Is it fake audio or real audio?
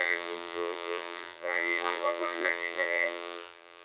fake